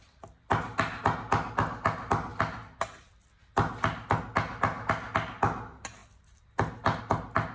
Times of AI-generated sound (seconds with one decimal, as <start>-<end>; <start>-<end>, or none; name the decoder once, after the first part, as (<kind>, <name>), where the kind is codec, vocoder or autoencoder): none